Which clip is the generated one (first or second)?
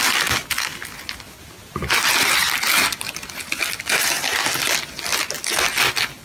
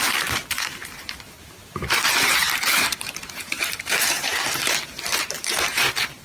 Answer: second